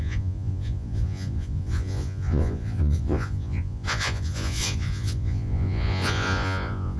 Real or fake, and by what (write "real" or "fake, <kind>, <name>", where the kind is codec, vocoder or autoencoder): fake, vocoder, Vocos